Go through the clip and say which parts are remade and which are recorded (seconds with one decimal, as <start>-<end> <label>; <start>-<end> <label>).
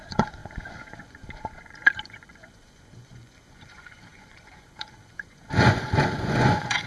0.0-6.9 remade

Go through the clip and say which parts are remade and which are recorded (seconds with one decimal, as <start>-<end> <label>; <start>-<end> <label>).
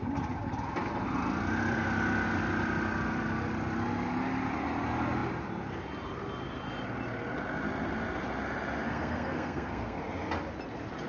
0.0-8.9 recorded; 8.9-10.0 remade; 10.0-11.1 recorded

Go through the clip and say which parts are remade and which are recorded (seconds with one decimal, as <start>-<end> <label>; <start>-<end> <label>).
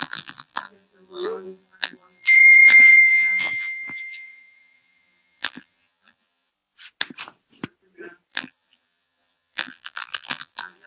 0.0-6.5 remade; 6.5-8.3 recorded; 8.3-10.9 remade